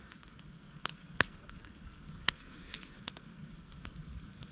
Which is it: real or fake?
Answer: fake